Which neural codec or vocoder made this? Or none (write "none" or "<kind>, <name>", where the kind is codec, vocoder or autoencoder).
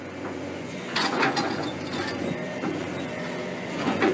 vocoder, Vocos